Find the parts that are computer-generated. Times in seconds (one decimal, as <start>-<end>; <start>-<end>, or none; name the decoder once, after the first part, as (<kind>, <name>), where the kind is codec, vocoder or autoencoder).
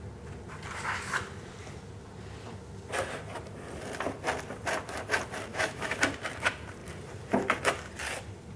5.5-6.0 (autoencoder, DAC-VAE)